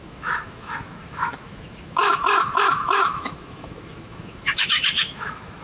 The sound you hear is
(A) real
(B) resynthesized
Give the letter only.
B